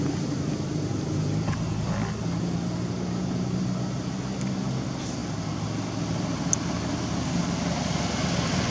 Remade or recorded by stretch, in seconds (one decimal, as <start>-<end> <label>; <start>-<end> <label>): 0.0-0.9 recorded; 0.9-2.4 remade; 2.4-8.7 recorded